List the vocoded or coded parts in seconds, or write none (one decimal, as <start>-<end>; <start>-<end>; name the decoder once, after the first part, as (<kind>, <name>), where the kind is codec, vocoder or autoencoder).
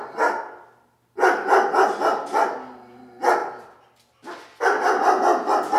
none